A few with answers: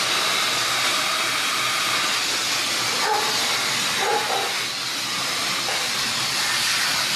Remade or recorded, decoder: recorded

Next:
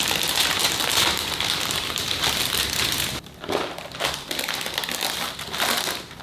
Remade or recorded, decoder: remade, vocoder, BigVGAN v2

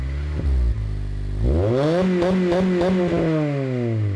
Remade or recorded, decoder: recorded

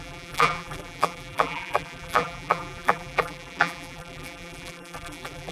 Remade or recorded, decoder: remade, vocoder, BigVGAN v2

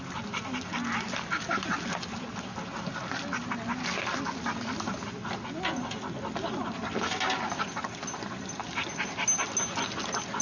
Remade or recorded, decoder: recorded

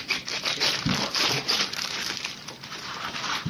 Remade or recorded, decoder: remade, vocoder, BigVGAN v2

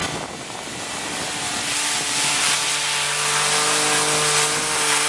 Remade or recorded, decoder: recorded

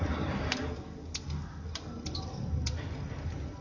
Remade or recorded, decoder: recorded